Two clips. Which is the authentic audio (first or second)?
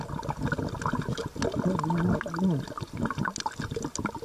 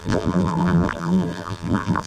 first